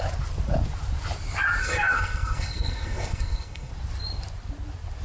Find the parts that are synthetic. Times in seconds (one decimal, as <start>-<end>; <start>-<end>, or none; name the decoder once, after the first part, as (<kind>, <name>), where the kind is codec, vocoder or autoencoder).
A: 1.6-3.7 (codec, SNAC)